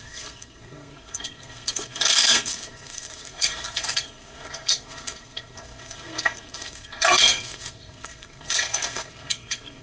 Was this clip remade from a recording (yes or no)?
yes